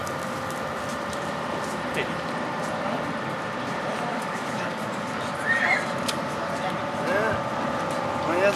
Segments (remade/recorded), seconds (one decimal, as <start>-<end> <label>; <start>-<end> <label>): 0.0-4.1 recorded; 4.1-5.1 remade; 5.1-8.6 recorded

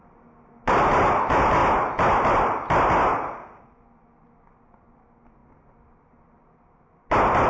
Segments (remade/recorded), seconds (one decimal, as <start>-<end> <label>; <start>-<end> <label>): 0.0-7.5 recorded

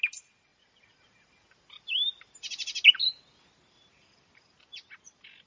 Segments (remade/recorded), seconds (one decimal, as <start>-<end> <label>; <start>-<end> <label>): 0.0-5.5 recorded